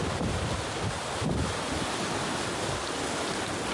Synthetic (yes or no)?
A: no